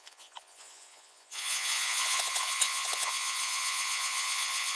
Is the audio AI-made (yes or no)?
yes